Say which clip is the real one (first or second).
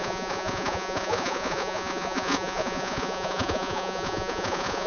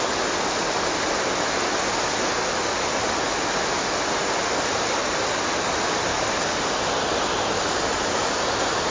second